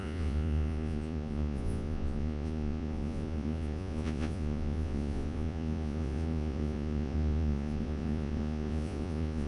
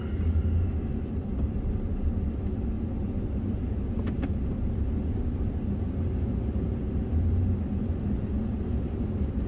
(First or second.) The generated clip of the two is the first